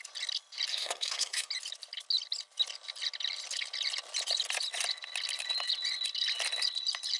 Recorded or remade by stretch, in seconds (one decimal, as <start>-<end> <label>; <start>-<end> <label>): 0.0-0.7 recorded; 0.7-1.5 remade; 1.5-7.2 recorded